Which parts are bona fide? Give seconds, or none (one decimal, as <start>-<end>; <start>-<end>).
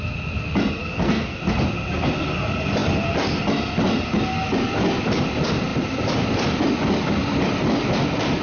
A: 0.0-0.8; 1.4-8.4